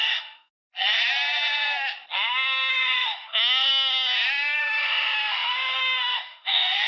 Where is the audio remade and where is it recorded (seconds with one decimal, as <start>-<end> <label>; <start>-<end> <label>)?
0.0-0.5 remade; 0.5-2.7 recorded; 2.7-3.7 remade; 3.7-4.6 recorded; 4.6-6.9 remade